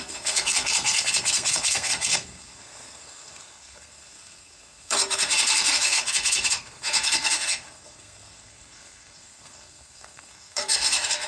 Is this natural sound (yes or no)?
no